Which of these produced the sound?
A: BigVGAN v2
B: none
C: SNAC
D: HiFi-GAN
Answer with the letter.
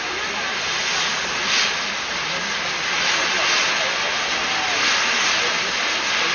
B